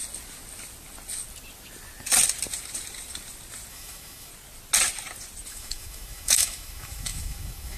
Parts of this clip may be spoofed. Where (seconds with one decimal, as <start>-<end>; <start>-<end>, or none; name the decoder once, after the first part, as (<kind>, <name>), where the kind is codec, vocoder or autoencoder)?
3.7-4.3 (autoencoder, DAC-VAE); 5.5-7.8